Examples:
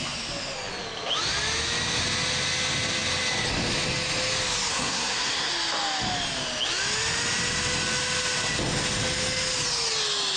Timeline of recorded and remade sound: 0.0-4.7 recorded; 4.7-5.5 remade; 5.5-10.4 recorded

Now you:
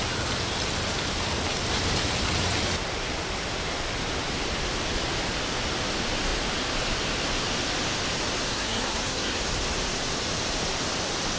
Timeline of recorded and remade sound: 0.0-8.5 recorded; 8.5-9.4 remade; 9.4-11.4 recorded

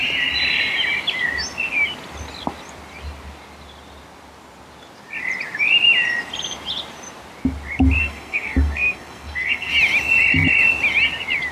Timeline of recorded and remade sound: 0.0-8.0 recorded; 8.0-9.7 remade; 9.7-11.5 recorded